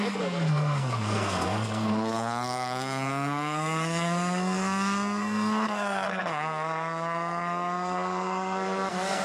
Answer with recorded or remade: remade